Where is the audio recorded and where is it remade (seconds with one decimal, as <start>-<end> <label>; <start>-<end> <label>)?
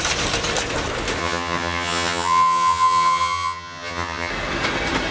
0.0-1.2 recorded; 1.2-4.3 remade; 4.3-5.1 recorded